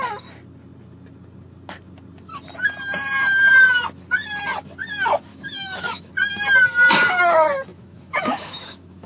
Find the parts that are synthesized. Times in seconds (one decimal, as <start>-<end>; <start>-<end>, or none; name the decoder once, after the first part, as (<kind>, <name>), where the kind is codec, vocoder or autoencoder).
5.3-6.1 (autoencoder, DAC-VAE); 7.7-9.1